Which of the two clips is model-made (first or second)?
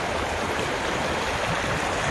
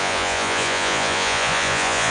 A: second